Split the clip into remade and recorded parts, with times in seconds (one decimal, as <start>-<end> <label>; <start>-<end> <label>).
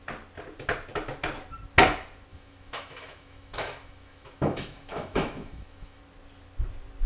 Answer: 0.0-2.3 recorded; 2.3-6.0 remade; 6.0-7.1 recorded